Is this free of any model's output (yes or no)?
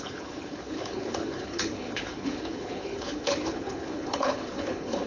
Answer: no